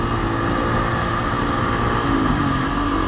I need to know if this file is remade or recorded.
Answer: recorded